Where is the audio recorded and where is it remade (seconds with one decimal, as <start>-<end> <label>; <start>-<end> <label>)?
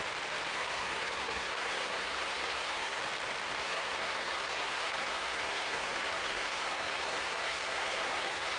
0.0-0.5 recorded; 0.5-3.0 remade; 3.0-3.6 recorded; 3.6-8.6 remade